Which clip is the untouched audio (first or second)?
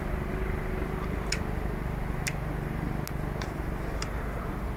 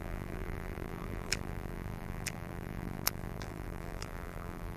first